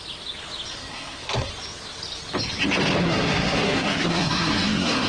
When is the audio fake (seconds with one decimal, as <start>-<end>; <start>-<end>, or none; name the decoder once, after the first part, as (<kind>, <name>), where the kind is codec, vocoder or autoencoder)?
0.7-1.5 (codec, SNAC); 3.0-5.1